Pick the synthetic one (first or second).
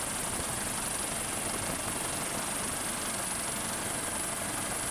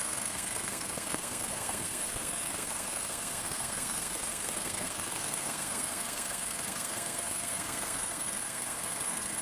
second